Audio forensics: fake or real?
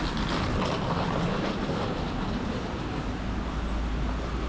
real